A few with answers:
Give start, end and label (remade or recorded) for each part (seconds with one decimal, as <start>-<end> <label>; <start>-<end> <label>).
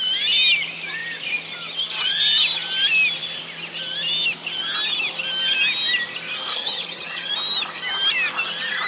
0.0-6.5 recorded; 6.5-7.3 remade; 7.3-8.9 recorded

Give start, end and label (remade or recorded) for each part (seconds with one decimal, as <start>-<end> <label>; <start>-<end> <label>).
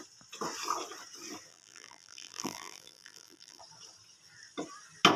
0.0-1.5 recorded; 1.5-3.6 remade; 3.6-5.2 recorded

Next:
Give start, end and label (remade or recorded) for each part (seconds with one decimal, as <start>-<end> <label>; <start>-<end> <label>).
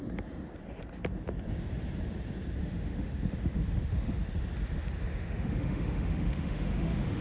0.0-2.6 recorded; 2.6-4.2 remade; 4.2-5.1 recorded; 5.1-7.2 remade